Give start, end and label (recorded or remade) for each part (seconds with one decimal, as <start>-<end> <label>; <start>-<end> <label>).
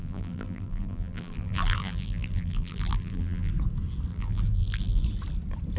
0.0-3.5 remade; 3.5-4.1 recorded; 4.1-5.0 remade; 5.0-5.8 recorded